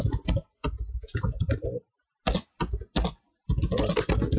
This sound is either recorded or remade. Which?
recorded